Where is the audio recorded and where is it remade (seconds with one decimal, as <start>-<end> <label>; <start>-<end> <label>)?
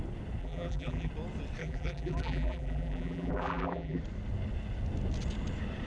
0.0-0.4 recorded; 0.4-1.1 remade; 1.1-1.6 recorded; 1.6-4.0 remade; 4.0-5.9 recorded